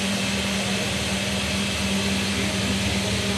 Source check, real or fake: real